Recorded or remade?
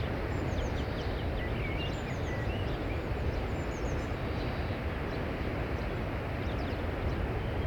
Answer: recorded